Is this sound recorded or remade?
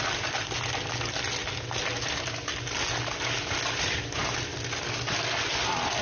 recorded